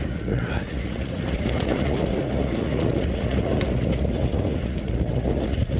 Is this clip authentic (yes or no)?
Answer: no